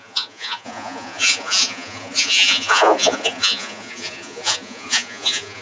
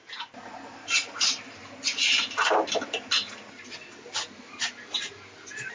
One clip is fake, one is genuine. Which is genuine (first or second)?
second